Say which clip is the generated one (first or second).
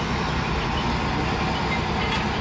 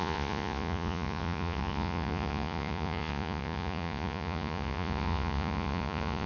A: second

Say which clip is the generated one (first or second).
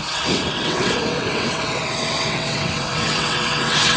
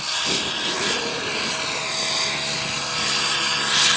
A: first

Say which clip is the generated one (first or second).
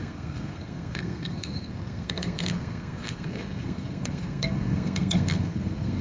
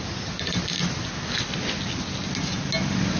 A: first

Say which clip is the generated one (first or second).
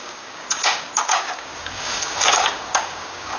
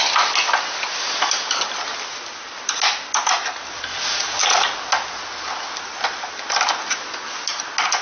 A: first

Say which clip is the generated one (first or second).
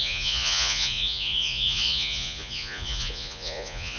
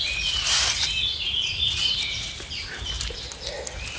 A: first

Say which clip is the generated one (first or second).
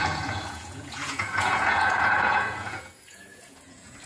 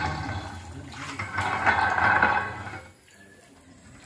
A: first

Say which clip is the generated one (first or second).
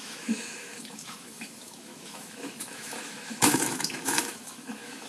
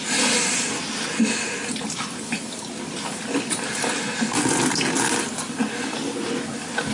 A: first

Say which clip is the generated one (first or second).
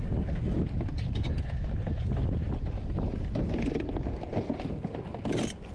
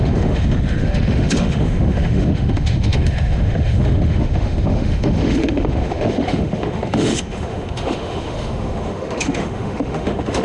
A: second